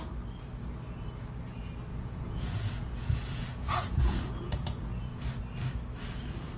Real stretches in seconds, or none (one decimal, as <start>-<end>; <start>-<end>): 0.0-1.9; 5.3-6.6